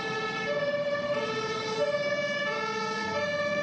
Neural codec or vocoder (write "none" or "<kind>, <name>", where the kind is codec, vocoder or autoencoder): vocoder, BigVGAN v2